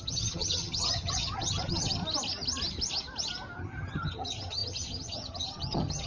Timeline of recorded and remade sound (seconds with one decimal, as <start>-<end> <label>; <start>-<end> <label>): 0.0-2.0 remade; 2.0-3.6 recorded; 3.6-6.1 remade